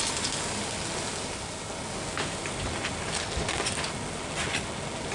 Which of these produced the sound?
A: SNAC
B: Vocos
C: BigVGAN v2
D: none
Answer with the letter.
D